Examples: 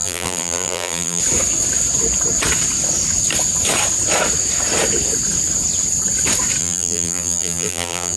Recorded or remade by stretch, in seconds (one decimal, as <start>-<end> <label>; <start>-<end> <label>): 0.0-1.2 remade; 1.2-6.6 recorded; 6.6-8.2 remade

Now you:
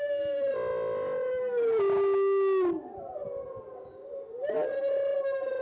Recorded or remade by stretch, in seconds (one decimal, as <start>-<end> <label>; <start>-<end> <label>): 0.0-5.6 recorded

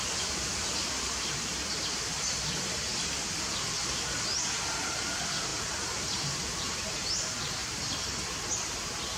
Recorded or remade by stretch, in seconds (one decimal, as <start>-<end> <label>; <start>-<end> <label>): 0.0-5.5 recorded; 5.5-7.1 remade; 7.1-7.6 recorded; 7.6-8.6 remade; 8.6-9.2 recorded

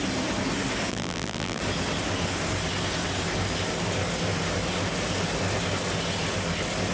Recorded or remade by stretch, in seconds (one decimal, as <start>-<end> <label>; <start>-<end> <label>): 0.0-0.9 recorded; 0.9-1.6 remade; 1.6-6.9 recorded

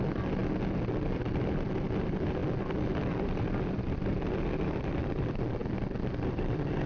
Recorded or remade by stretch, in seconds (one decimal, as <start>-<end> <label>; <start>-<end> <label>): 0.0-0.4 remade; 0.4-2.0 recorded; 2.0-2.4 remade; 2.4-3.1 recorded; 3.1-5.6 remade; 5.6-6.1 recorded; 6.1-6.9 remade

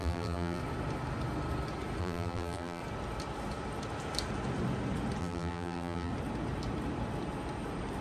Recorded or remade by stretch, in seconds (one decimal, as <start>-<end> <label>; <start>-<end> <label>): 0.0-0.6 remade; 0.6-2.0 recorded; 2.0-2.8 remade; 2.8-5.2 recorded; 5.2-6.1 remade; 6.1-8.0 recorded